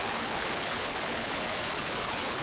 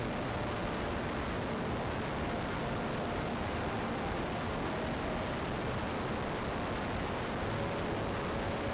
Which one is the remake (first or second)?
first